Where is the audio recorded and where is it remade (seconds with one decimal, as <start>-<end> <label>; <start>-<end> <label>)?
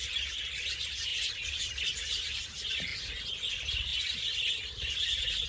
0.0-5.5 recorded